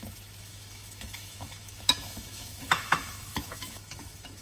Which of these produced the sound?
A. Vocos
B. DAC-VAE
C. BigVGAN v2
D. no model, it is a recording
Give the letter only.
B